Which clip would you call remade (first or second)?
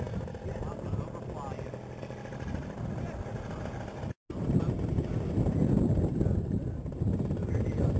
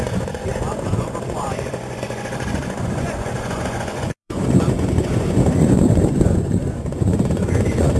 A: second